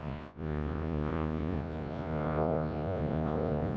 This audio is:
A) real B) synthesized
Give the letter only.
B